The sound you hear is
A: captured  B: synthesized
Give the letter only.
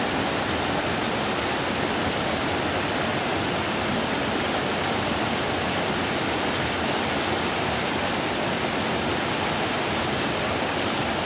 A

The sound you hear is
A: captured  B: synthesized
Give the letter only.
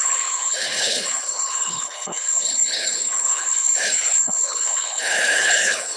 B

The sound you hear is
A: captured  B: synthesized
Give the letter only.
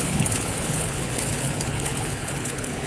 B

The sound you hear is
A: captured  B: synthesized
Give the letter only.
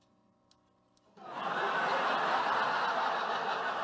A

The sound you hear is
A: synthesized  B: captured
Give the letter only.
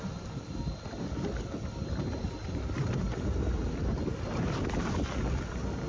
B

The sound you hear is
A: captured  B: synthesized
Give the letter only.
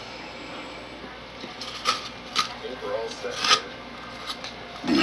A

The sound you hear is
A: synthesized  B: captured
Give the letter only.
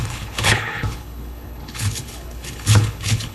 A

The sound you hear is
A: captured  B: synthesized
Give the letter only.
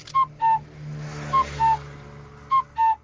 A